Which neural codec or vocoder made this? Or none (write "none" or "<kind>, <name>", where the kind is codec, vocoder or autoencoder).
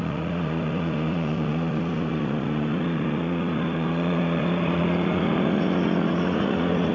vocoder, Vocos